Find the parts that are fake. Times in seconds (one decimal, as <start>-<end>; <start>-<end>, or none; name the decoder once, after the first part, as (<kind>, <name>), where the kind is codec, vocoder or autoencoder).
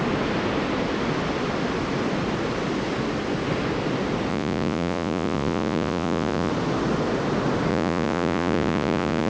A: 4.3-6.5 (vocoder, Vocos); 7.7-9.3